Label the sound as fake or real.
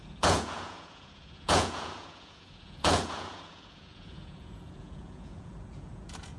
fake